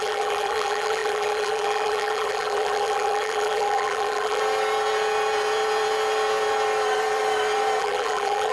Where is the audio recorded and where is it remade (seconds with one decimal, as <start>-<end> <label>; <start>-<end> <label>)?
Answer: 0.0-4.4 remade; 4.4-7.8 recorded; 7.8-8.5 remade